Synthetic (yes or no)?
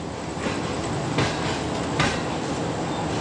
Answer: no